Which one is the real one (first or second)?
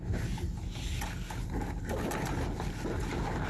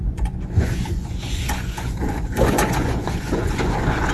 first